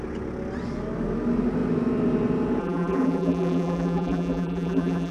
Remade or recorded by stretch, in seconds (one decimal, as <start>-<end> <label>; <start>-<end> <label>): 0.0-2.6 recorded; 2.6-5.1 remade